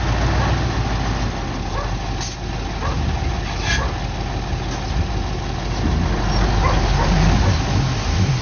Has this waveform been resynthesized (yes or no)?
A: no